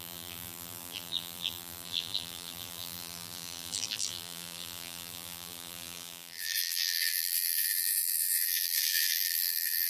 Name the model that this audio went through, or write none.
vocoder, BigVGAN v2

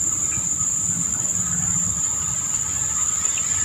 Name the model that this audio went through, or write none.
vocoder, BigVGAN v2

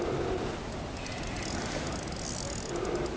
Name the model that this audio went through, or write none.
none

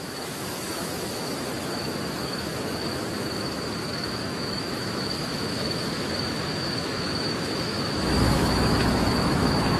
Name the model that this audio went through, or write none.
autoencoder, DAC-VAE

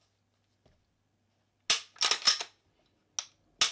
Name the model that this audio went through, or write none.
none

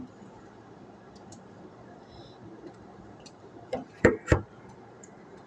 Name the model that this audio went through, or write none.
vocoder, BigVGAN v2